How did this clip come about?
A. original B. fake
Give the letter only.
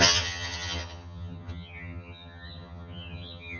B